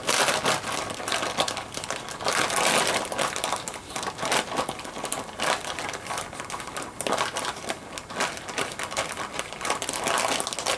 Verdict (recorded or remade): recorded